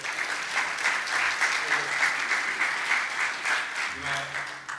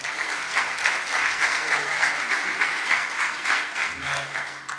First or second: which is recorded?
first